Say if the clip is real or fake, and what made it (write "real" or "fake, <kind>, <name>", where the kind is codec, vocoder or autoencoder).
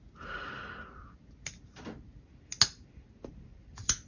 real